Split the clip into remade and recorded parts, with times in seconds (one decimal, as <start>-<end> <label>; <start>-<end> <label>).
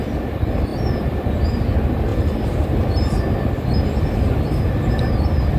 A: 0.0-5.6 recorded